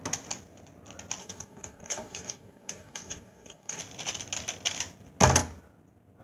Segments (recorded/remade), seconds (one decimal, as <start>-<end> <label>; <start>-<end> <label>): 0.0-1.2 recorded; 1.2-3.8 remade; 3.8-6.2 recorded